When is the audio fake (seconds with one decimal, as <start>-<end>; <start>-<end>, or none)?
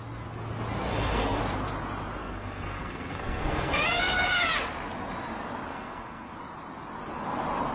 0.9-1.4; 2.2-3.8; 5.7-6.3